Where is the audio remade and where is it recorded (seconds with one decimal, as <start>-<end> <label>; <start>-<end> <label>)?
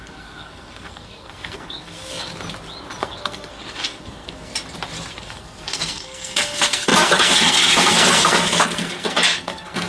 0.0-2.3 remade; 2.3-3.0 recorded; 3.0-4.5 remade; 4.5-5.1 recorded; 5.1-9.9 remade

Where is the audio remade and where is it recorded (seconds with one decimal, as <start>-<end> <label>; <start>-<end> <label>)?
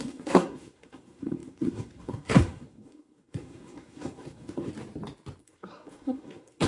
0.0-4.7 remade; 4.7-5.4 recorded; 5.4-6.7 remade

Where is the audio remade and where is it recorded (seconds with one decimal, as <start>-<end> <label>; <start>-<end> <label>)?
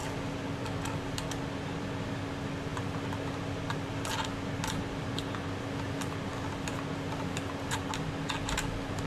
0.0-9.1 recorded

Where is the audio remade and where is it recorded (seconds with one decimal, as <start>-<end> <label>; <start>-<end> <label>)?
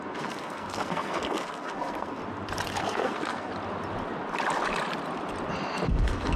0.0-2.2 remade; 2.2-2.8 recorded; 2.8-3.5 remade; 3.5-5.9 recorded; 5.9-6.4 remade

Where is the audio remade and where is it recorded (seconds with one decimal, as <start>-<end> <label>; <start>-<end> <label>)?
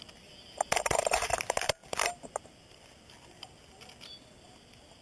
0.0-5.0 recorded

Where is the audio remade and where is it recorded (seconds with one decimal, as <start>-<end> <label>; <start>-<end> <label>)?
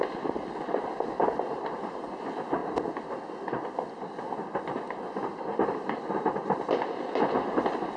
0.0-8.0 recorded